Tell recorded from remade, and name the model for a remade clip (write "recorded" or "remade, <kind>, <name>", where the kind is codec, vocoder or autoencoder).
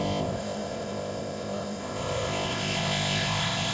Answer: remade, codec, ZipCodec